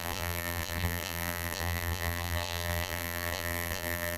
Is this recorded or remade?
remade